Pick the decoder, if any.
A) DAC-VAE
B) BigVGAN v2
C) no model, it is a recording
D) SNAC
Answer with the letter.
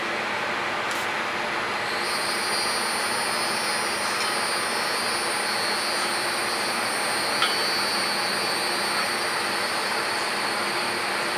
C